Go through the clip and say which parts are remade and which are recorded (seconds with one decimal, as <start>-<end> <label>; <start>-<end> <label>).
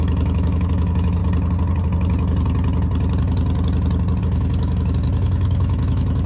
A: 0.0-1.2 remade; 1.2-4.2 recorded; 4.2-6.3 remade